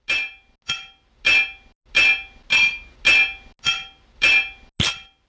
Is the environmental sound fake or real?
real